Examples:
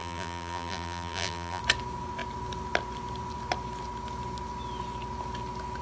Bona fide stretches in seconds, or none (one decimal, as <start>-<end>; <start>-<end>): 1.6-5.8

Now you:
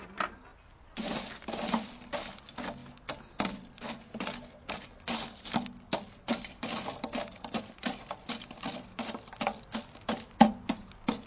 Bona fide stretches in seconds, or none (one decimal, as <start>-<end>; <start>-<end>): 0.0-11.3

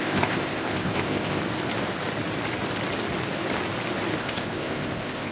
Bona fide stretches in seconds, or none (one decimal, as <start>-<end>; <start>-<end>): 1.4-4.2

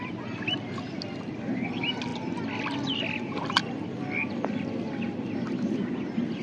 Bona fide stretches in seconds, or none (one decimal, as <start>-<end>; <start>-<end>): 0.0-6.4